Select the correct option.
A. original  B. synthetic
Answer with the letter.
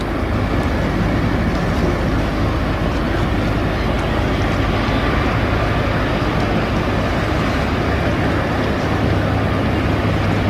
A